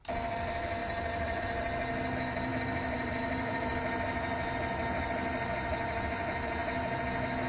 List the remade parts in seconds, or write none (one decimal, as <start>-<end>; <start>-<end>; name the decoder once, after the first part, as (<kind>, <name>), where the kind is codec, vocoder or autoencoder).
0.8-1.4 (vocoder, BigVGAN v2); 2.5-3.7